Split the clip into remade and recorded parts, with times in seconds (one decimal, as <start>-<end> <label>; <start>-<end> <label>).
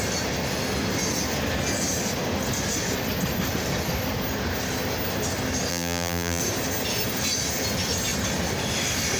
0.0-5.7 recorded; 5.7-6.4 remade; 6.4-9.2 recorded